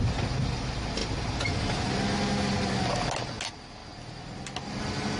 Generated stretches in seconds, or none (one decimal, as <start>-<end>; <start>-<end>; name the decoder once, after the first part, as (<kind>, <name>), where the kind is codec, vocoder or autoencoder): none